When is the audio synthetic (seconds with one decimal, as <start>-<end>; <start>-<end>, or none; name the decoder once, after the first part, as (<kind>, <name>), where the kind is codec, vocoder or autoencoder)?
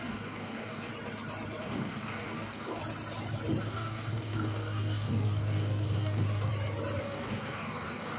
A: 0.0-0.9 (codec, DAC); 1.6-2.8; 3.6-6.5; 7.0-8.2